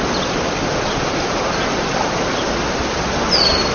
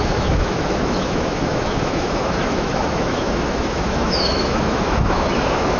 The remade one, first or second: second